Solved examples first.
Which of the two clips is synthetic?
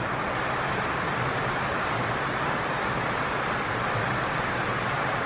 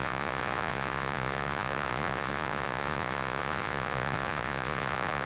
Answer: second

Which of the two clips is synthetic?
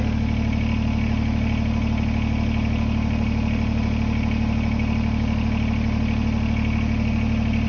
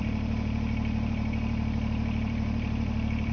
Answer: second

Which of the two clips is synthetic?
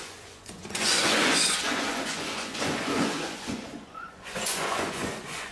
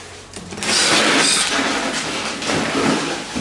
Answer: first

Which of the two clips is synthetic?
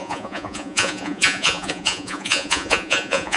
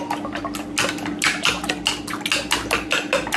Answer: first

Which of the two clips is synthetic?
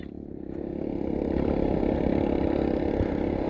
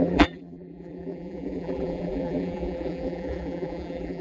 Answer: second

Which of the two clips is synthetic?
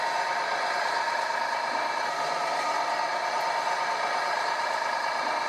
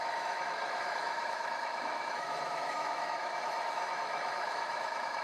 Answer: second